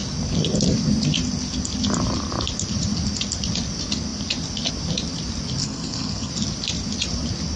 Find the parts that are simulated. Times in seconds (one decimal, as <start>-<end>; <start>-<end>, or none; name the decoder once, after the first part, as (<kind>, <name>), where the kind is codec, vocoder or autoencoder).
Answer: 5.6-6.3 (codec, SNAC)